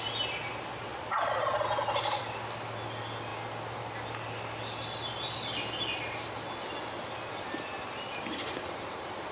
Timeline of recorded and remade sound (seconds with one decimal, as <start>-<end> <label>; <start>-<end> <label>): 0.0-9.3 recorded